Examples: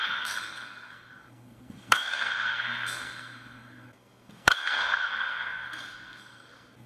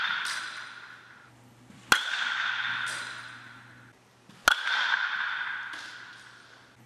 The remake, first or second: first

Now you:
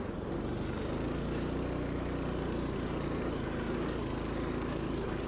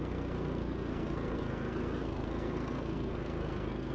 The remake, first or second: second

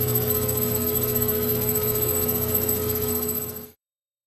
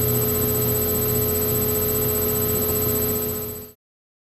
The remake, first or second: first